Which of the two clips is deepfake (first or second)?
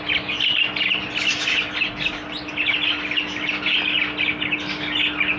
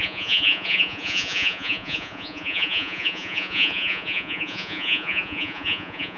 second